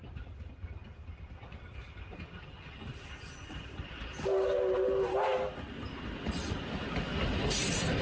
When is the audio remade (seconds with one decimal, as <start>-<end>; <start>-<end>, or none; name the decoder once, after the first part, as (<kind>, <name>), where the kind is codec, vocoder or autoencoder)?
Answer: none